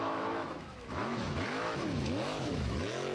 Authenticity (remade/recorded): remade